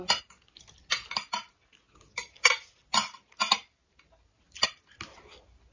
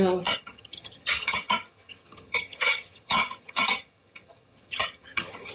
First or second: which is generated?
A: second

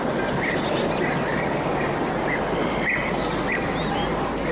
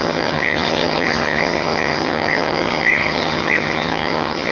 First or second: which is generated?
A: second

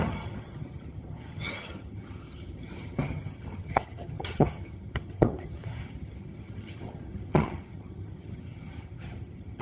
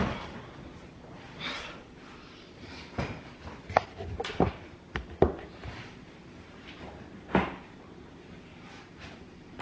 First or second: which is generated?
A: first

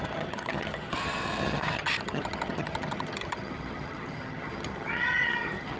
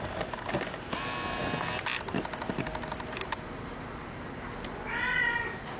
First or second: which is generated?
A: first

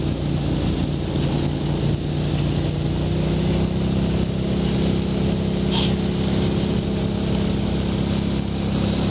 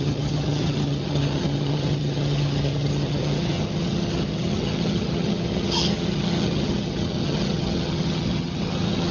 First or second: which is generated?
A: second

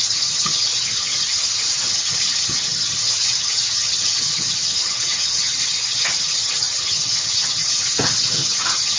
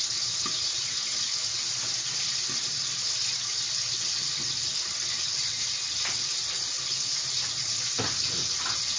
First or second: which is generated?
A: first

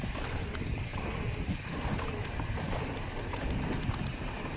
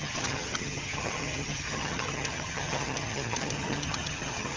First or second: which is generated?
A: second